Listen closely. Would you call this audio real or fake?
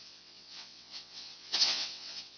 fake